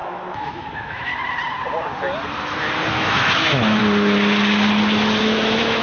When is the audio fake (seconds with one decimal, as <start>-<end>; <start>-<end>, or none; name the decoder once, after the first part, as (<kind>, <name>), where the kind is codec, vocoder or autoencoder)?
0.0-1.1 (autoencoder, DAC-VAE); 2.9-3.8; 5.2-5.8